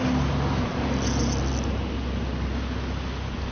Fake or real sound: real